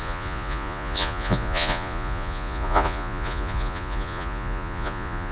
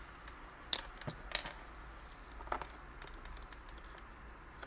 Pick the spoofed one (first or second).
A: first